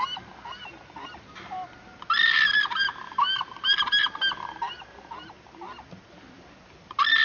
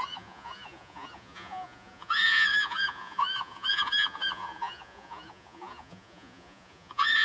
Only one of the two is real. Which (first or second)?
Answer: first